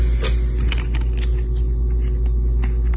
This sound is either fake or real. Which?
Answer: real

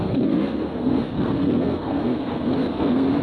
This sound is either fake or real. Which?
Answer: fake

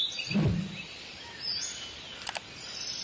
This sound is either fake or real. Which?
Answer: real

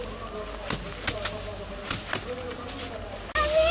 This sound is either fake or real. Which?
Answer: real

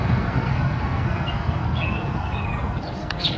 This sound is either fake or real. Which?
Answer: fake